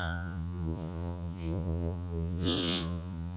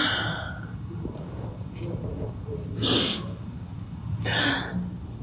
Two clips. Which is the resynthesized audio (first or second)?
first